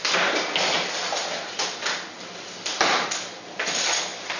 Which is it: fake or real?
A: real